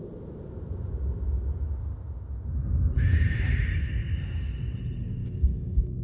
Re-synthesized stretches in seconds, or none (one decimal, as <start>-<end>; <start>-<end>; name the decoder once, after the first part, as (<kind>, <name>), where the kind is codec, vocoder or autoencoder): 5.2-6.0 (codec, DAC)